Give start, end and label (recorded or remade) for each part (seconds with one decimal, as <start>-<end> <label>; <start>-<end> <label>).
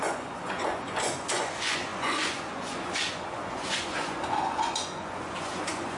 0.0-6.0 remade